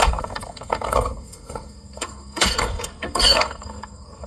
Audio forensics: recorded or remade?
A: remade